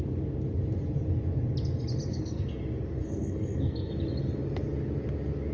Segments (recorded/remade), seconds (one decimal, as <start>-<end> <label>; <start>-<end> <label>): 0.0-2.1 recorded; 2.1-2.6 remade; 2.6-3.0 recorded; 3.0-3.9 remade; 3.9-5.5 recorded